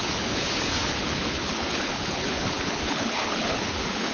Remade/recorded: remade